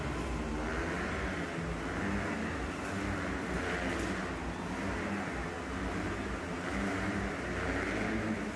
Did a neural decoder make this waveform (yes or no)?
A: no